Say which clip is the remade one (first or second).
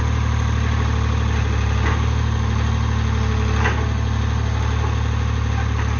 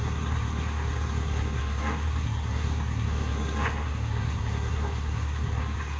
second